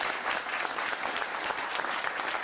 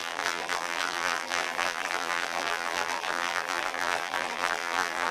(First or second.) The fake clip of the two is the second